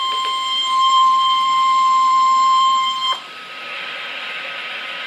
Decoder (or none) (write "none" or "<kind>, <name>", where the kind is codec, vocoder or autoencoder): vocoder, BigVGAN v2